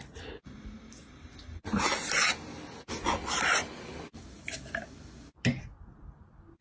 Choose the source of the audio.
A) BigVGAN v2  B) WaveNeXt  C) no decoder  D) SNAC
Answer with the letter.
C